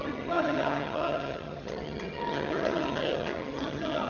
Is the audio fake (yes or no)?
yes